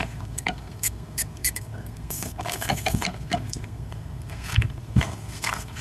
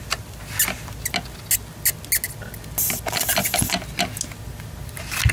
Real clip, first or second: second